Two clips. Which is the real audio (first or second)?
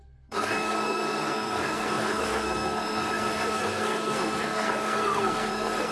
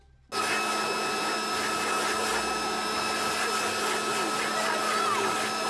second